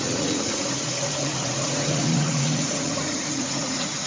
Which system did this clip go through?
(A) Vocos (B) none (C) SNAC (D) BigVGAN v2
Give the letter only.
A